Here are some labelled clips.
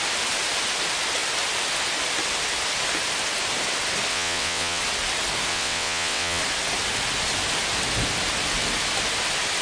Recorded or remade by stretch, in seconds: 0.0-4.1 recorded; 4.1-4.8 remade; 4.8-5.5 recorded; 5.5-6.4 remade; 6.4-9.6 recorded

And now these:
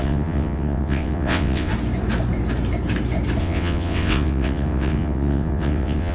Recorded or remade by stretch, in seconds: 0.0-1.7 remade; 1.7-3.4 recorded; 3.4-6.1 remade

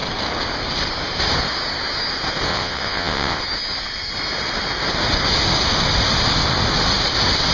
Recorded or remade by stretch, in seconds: 0.0-2.5 recorded; 2.5-3.4 remade; 3.4-7.5 recorded